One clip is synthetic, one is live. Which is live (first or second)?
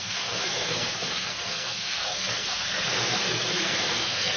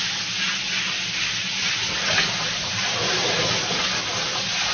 second